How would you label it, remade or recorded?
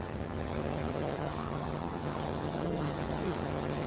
remade